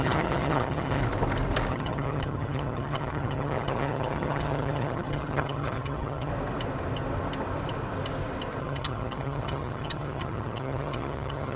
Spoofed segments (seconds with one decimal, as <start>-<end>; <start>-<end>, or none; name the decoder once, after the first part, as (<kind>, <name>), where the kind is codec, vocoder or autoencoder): 0.0-1.0 (vocoder, HiFi-GAN); 1.7-6.3; 8.6-11.6